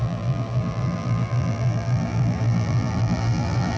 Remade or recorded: remade